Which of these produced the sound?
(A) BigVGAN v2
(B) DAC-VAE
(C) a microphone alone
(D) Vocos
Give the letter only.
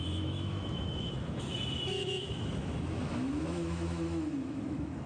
B